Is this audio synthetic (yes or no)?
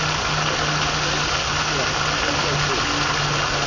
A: no